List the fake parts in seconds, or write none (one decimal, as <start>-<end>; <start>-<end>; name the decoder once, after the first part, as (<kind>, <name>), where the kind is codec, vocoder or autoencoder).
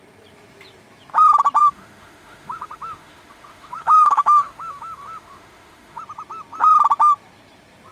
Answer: 1.6-6.0 (autoencoder, DAC-VAE)